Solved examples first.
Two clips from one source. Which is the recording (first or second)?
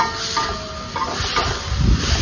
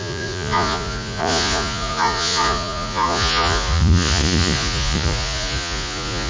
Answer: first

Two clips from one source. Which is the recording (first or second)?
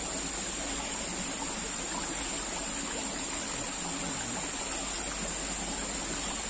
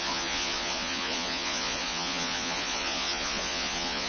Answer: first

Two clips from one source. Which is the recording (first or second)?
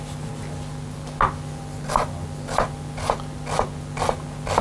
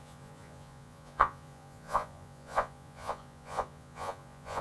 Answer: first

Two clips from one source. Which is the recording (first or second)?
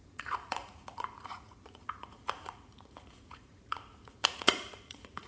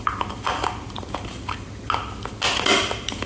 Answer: second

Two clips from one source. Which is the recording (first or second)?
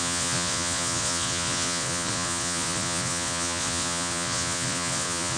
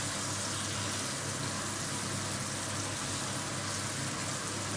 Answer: second